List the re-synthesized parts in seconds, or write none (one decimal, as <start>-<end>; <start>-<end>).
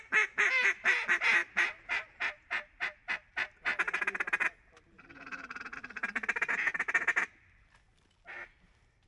1.4-3.0